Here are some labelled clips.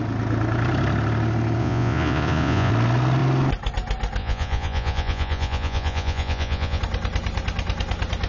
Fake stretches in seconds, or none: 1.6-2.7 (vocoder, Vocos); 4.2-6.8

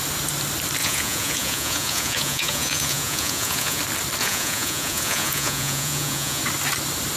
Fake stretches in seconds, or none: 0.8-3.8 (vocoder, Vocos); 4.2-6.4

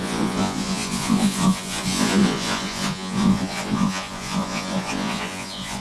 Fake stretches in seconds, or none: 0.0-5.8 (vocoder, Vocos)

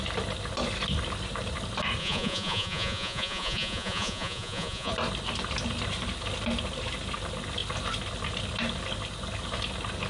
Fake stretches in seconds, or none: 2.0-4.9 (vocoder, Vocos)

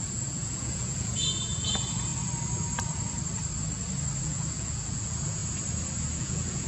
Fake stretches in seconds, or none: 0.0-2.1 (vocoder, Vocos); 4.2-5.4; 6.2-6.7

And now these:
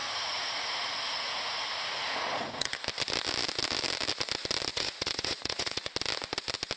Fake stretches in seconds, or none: 0.0-2.7 (vocoder, Vocos); 4.7-5.9

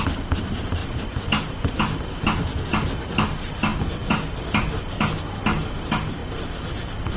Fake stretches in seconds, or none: none